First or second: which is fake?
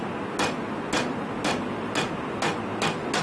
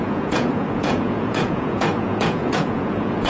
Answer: second